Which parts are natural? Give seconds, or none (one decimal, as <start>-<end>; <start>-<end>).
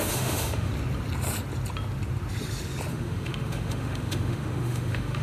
0.7-2.9